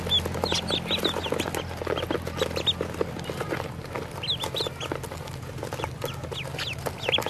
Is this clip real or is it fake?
real